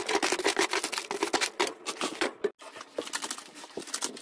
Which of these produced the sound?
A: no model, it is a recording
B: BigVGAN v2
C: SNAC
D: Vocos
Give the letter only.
A